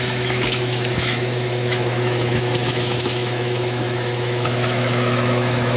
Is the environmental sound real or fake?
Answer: fake